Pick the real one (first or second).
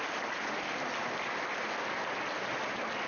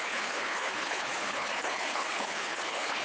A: first